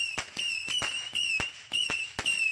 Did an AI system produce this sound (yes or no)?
no